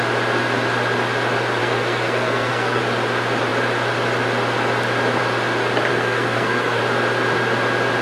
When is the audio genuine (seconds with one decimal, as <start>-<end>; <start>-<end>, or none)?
0.0-1.6; 2.8-5.9; 6.8-8.0